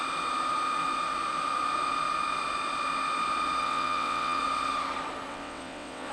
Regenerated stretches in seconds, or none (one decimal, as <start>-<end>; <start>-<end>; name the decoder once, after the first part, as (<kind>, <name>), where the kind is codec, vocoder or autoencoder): 3.6-4.4 (vocoder, WaveNeXt); 5.3-6.1